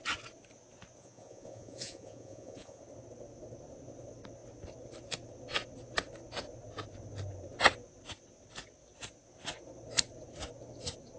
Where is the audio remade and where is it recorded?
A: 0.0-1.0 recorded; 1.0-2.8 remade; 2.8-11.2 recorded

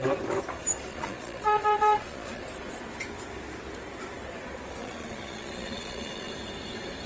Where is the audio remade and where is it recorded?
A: 0.0-0.9 recorded; 0.9-2.4 remade; 2.4-4.8 recorded; 4.8-6.3 remade; 6.3-7.1 recorded

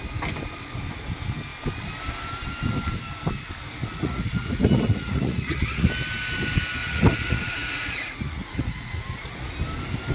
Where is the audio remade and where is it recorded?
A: 0.0-3.8 recorded; 3.8-5.9 remade; 5.9-6.8 recorded; 6.8-9.5 remade; 9.5-10.1 recorded

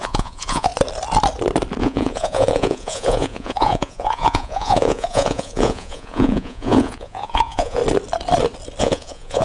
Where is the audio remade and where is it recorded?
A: 0.0-0.7 remade; 0.7-1.8 recorded; 1.8-7.8 remade; 7.8-8.8 recorded; 8.8-9.4 remade